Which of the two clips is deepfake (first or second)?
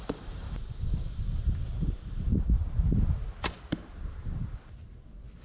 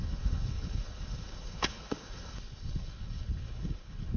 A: second